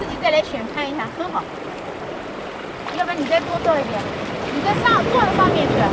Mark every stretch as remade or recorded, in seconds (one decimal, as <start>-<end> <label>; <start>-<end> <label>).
0.0-0.8 remade; 0.8-1.5 recorded; 1.5-5.9 remade